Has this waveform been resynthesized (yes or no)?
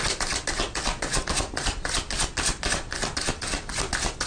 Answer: no